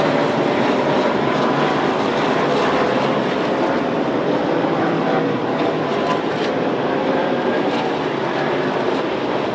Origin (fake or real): fake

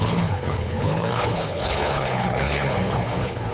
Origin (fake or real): fake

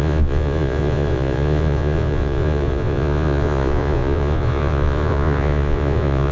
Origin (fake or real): fake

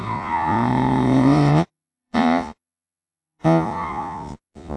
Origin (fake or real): fake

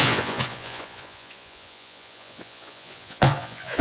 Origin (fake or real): fake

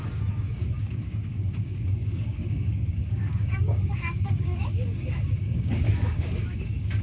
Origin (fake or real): fake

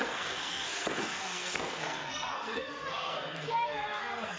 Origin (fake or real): fake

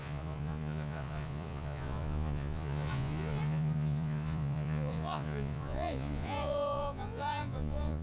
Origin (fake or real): fake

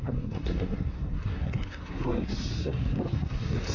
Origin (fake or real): fake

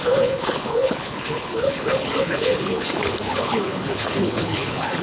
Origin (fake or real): fake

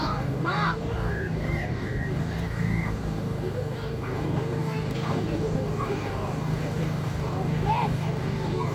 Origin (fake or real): fake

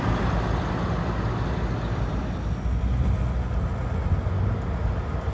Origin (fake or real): real